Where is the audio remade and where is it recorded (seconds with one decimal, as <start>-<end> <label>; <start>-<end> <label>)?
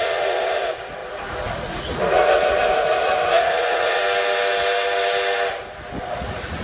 0.0-4.0 remade; 4.0-6.0 recorded; 6.0-6.6 remade